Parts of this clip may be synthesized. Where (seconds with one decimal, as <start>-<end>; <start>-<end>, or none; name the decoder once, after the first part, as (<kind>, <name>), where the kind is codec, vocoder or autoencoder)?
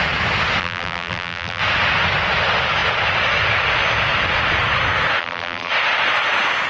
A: 0.6-1.6 (vocoder, BigVGAN v2); 5.2-5.7